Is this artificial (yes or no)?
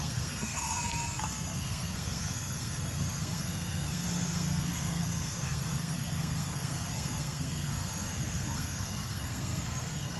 yes